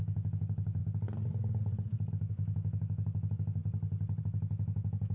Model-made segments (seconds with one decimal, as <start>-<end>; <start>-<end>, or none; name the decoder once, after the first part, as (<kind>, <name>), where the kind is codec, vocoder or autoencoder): 0.0-0.8 (autoencoder, DAC-VAE); 2.1-3.6; 4.2-5.1